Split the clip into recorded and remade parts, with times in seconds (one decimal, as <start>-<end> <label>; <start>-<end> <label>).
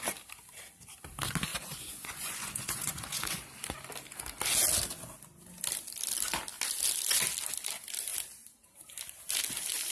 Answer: 0.0-1.5 recorded; 1.5-3.4 remade; 3.4-9.9 recorded